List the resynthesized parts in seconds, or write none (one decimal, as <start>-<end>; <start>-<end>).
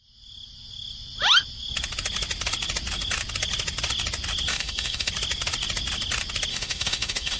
4.5-5.1; 6.5-7.4